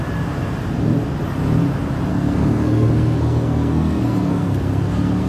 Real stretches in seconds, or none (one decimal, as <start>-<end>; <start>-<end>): 0.0-2.1